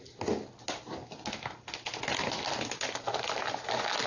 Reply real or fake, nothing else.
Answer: real